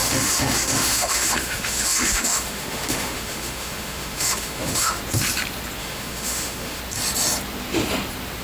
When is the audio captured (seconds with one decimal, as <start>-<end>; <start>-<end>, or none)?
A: 5.0-5.8; 6.8-8.4